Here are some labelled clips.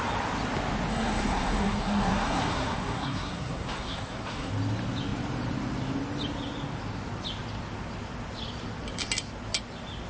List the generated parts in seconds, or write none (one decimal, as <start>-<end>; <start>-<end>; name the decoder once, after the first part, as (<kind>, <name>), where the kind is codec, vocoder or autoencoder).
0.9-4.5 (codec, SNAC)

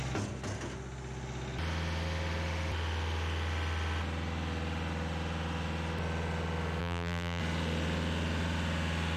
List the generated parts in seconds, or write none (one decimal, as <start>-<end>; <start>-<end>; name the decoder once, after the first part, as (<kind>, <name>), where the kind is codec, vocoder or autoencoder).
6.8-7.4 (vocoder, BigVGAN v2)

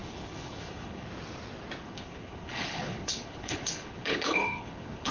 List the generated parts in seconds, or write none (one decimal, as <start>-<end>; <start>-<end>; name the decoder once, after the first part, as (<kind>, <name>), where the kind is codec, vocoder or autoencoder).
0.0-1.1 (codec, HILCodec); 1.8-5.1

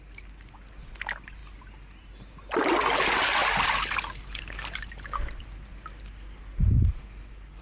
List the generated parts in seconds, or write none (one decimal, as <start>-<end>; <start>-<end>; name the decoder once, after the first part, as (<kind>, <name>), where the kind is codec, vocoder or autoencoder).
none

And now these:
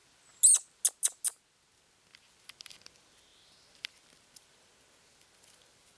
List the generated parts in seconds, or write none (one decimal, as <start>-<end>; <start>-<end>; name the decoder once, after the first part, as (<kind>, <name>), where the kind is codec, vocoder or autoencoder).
none

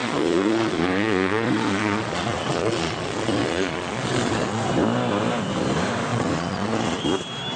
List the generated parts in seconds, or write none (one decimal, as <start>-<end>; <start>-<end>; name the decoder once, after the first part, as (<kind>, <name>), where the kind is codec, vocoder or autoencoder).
0.0-4.6 (vocoder, Vocos); 6.1-7.0

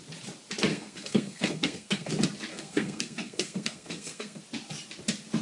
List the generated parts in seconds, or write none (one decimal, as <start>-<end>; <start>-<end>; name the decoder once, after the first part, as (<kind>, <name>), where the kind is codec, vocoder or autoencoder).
0.7-2.1 (codec, SNAC); 2.5-4.4